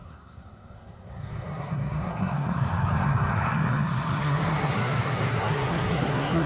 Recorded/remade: remade